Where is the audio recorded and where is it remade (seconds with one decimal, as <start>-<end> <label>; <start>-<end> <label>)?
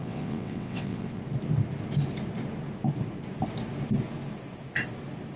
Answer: 0.0-1.2 remade; 1.2-5.4 recorded